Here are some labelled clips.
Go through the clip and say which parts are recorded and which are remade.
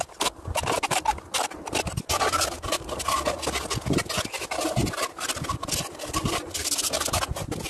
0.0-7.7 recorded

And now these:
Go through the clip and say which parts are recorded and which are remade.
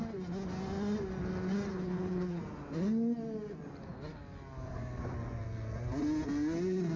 0.0-1.7 recorded; 1.7-2.4 remade; 2.4-7.0 recorded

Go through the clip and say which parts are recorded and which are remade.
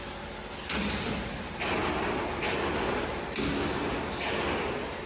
0.0-5.1 recorded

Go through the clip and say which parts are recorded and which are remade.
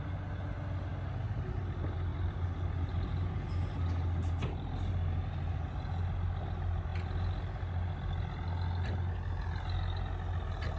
0.0-10.8 recorded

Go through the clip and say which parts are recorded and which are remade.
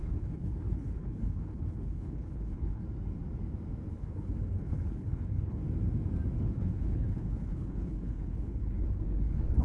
0.0-2.8 remade; 2.8-3.9 recorded; 3.9-5.6 remade; 5.6-6.4 recorded; 6.4-9.6 remade